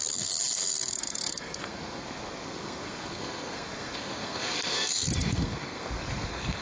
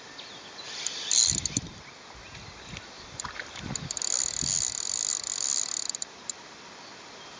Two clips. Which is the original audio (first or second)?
second